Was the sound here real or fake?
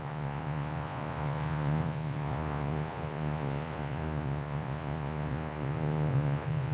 fake